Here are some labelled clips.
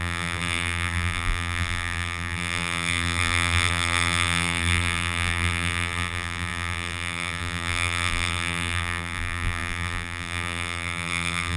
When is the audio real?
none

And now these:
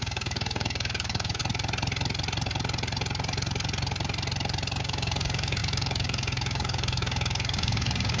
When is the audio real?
1.4-4.8

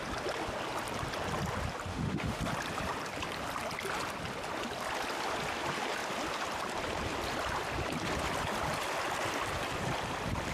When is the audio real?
0.0-1.9; 2.4-10.5

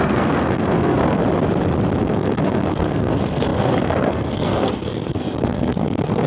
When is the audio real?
1.2-2.0

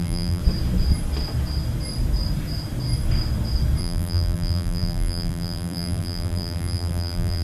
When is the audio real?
0.4-3.8

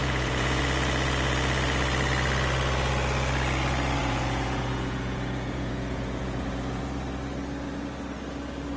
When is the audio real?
0.6-4.0; 6.8-8.8